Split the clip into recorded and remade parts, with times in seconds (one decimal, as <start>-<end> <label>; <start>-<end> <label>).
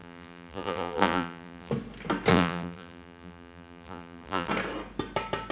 0.0-1.7 remade; 1.7-2.3 recorded; 2.3-4.5 remade; 4.5-5.5 recorded